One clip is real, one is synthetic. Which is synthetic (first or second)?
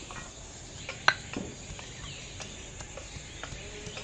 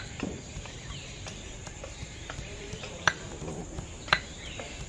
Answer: second